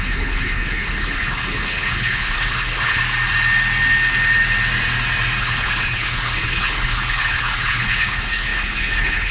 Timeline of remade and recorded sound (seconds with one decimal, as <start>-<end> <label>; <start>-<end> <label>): 0.0-3.0 remade; 3.0-5.4 recorded; 5.4-9.3 remade